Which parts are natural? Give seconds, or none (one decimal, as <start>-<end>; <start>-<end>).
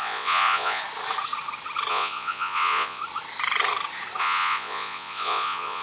0.8-1.9; 3.0-4.2